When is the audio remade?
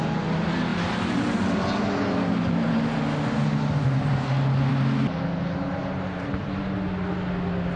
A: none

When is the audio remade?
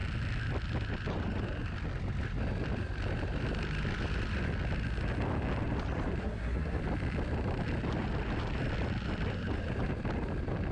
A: 6.2-6.8 (codec, SNAC)